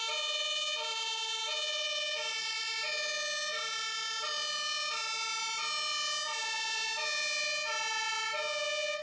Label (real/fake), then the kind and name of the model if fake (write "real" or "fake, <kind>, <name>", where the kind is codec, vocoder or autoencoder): real